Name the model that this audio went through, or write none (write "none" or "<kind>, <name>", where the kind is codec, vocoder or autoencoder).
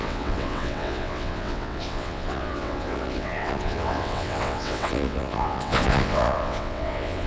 vocoder, WaveNeXt